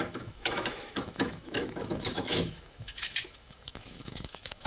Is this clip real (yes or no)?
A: no